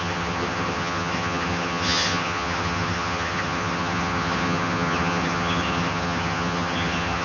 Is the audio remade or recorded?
remade